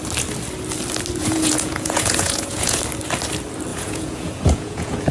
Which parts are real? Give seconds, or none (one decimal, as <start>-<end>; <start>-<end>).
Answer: 0.0-1.2; 2.8-3.7